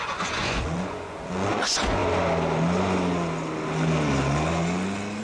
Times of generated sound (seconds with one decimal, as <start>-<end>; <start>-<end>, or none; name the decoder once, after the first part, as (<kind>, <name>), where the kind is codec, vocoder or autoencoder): 0.0-2.0 (vocoder, Vocos)